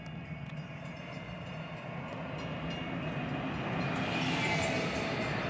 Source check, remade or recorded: recorded